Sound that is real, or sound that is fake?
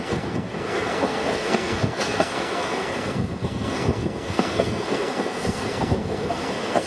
fake